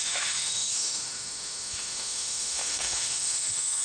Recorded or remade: remade